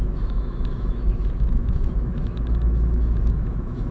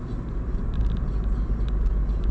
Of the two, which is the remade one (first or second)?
first